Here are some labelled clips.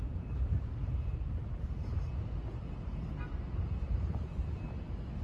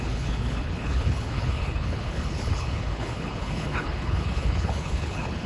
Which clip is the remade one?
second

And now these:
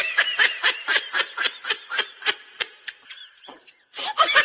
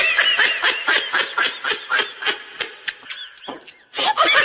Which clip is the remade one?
first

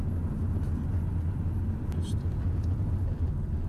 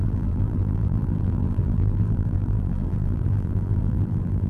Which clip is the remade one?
second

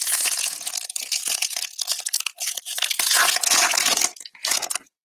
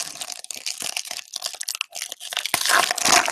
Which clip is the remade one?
first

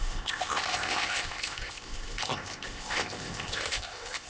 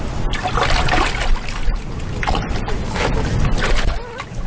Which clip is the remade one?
first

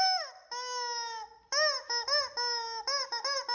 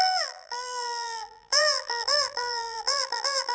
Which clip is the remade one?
second